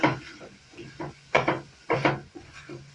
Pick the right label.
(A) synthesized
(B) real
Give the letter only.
A